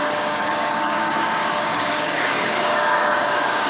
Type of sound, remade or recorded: remade